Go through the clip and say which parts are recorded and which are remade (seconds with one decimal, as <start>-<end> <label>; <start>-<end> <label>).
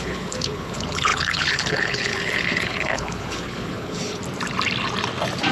0.0-4.2 remade; 4.2-5.5 recorded